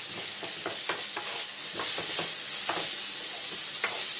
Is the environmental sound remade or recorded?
recorded